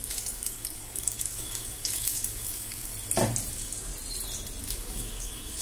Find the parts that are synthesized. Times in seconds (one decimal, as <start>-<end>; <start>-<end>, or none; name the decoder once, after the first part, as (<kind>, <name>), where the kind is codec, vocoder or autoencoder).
0.0-2.9 (codec, DAC); 3.5-3.9; 4.6-5.6